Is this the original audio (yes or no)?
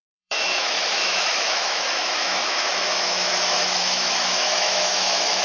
no